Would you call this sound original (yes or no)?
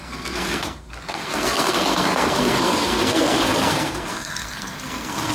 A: no